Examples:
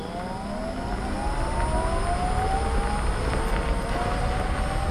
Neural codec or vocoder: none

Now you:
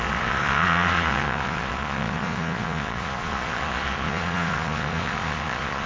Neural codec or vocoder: vocoder, Vocos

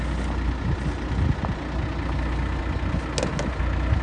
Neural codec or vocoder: none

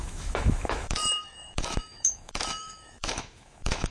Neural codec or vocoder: autoencoder, DAC-VAE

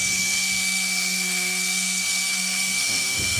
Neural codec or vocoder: codec, SNAC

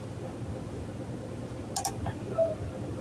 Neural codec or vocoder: none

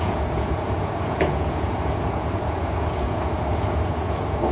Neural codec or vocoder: vocoder, Vocos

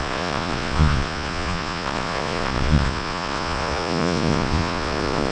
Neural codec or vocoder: vocoder, Vocos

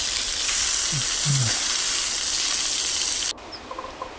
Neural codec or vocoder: none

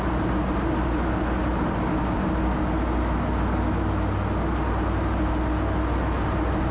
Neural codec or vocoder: none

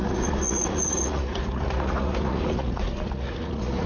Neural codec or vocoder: vocoder, Vocos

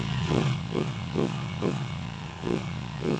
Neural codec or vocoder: vocoder, Vocos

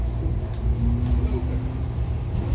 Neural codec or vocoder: none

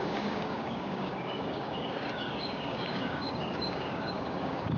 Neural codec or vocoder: codec, DAC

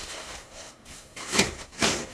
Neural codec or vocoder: codec, SNAC